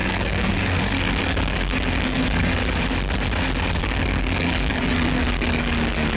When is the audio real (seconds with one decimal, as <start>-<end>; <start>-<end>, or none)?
2.6-3.8